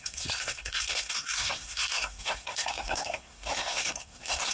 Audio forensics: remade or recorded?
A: remade